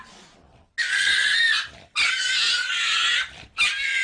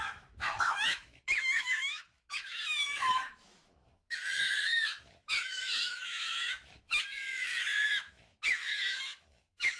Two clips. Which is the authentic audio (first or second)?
first